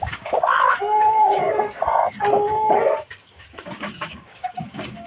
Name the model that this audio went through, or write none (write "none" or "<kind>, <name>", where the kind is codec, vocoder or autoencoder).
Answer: codec, DAC